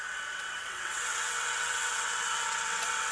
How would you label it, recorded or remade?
remade